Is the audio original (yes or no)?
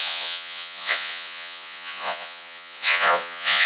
no